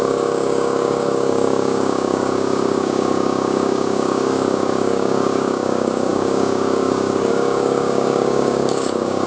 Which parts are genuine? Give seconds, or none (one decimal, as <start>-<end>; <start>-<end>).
none

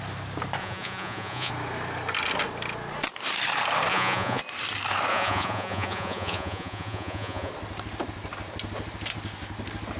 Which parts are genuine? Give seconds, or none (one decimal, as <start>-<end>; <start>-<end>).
0.0-0.6; 1.5-3.9; 4.4-5.1; 7.5-10.0

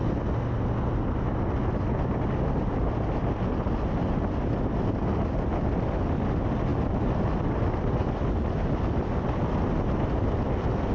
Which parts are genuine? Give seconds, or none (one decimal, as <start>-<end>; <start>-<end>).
0.0-6.7; 8.0-10.9

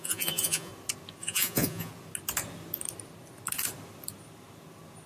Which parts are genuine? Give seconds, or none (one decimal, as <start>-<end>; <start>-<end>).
0.7-1.2; 1.9-5.1